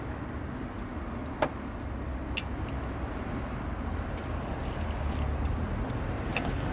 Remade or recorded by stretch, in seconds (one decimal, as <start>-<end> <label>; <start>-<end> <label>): 0.0-6.7 recorded